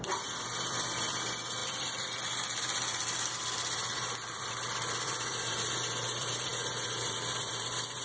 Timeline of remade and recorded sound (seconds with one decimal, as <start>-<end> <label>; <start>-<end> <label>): 0.0-8.0 remade

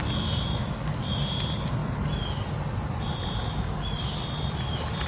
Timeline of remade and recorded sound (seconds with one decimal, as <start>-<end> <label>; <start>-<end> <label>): 0.0-5.1 recorded

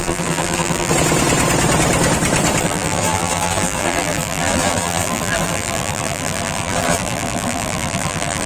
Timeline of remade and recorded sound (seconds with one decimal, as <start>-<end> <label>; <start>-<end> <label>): 0.0-0.9 remade; 0.9-2.6 recorded; 2.6-8.5 remade

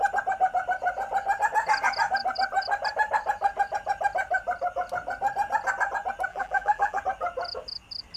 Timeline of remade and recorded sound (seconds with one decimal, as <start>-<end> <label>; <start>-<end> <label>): 0.0-6.3 recorded; 6.3-7.0 remade; 7.0-8.2 recorded